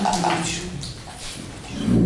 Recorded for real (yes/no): yes